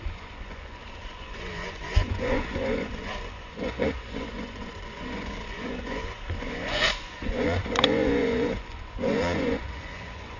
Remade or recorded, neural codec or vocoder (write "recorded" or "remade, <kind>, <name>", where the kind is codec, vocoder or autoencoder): remade, vocoder, Vocos